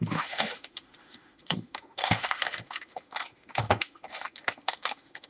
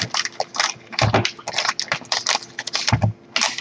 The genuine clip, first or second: second